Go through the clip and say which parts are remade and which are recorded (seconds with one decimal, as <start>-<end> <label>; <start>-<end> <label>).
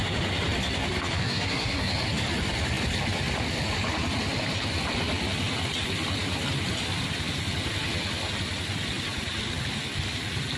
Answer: 0.0-1.2 recorded; 1.2-1.9 remade; 1.9-10.6 recorded